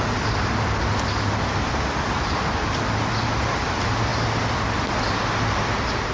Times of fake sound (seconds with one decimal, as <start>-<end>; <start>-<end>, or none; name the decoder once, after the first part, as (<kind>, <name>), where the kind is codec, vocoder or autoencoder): none